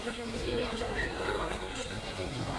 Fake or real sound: fake